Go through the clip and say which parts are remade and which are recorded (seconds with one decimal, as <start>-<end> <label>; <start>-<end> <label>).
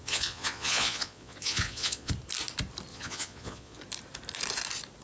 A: 0.0-2.1 remade; 2.1-2.9 recorded; 2.9-3.8 remade; 3.8-5.0 recorded